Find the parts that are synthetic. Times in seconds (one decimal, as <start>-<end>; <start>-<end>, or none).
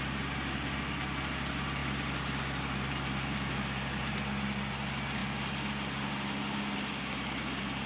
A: none